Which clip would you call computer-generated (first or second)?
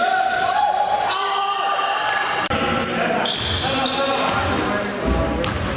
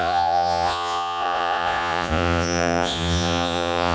second